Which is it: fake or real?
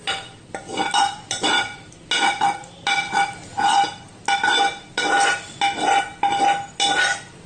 real